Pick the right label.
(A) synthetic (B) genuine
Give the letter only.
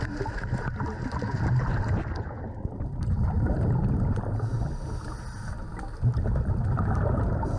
B